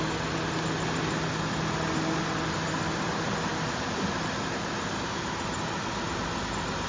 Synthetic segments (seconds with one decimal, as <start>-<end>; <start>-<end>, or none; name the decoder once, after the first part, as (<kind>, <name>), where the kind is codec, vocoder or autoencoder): none